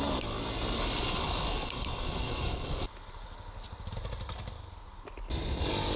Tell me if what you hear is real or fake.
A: real